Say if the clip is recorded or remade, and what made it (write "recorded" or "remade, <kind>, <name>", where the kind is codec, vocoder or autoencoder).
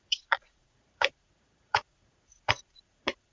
remade, vocoder, Vocos